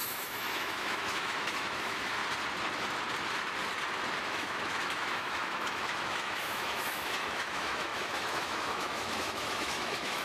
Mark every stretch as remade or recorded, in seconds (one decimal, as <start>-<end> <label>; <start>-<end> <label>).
0.0-2.2 remade; 2.2-4.2 recorded; 4.2-10.2 remade